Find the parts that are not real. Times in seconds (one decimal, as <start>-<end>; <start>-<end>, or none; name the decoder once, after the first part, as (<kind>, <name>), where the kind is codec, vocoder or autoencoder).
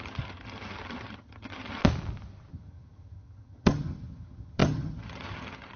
0.0-1.8 (vocoder, HiFi-GAN); 2.5-5.8